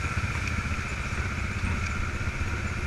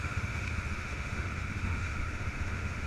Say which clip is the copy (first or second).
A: second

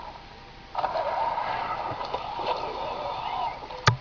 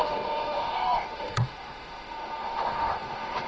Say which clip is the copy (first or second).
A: second